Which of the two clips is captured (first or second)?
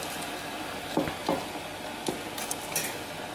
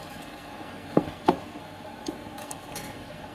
first